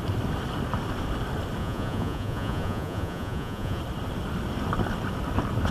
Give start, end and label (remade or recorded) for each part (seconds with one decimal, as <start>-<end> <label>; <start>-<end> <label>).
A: 0.0-1.6 recorded; 1.6-3.8 remade; 3.8-5.7 recorded